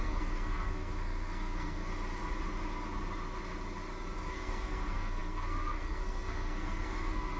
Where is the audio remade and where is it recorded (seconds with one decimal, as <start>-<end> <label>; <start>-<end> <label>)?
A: 0.0-1.9 remade; 1.9-4.3 recorded; 4.3-7.4 remade